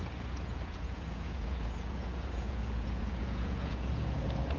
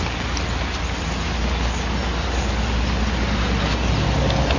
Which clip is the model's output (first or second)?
first